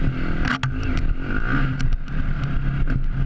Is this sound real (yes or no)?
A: yes